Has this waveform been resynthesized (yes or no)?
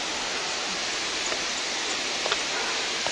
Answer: no